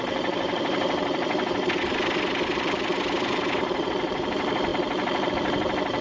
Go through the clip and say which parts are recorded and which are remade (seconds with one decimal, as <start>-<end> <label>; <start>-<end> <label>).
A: 0.0-6.0 recorded